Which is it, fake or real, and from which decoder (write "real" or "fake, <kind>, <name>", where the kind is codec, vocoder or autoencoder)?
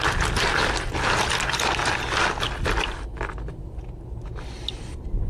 real